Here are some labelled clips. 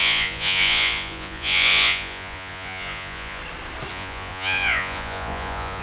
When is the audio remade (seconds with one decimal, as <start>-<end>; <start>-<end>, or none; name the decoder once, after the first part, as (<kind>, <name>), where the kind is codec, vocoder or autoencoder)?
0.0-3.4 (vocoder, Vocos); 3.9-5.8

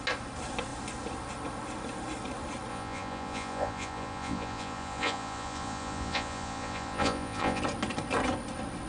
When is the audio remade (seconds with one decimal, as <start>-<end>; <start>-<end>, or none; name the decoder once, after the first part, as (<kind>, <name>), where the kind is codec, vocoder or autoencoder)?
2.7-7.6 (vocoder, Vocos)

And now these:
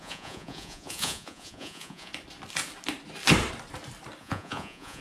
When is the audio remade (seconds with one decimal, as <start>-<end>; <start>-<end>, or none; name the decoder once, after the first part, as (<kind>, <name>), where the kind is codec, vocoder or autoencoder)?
0.0-2.1 (vocoder, Vocos); 4.2-5.0

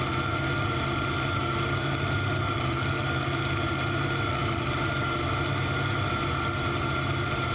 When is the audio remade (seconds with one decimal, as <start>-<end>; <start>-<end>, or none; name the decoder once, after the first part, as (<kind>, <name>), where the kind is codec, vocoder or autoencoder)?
none

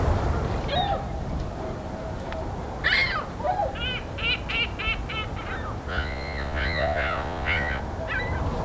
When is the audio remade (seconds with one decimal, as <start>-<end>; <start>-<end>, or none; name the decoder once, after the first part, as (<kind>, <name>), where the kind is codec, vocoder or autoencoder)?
5.9-7.8 (vocoder, Vocos)

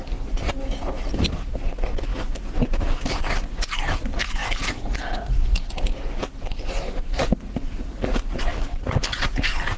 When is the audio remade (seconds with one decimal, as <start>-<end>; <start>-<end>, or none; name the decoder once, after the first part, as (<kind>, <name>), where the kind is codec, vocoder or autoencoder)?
none

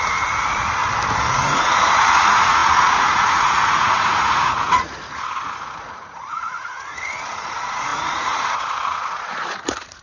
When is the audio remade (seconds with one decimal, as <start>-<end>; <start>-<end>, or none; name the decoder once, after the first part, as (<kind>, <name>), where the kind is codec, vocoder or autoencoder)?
0.0-0.8 (vocoder, Vocos); 1.3-10.0